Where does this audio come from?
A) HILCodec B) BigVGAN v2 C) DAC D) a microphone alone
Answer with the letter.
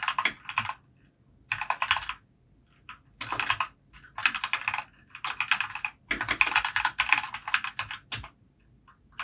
D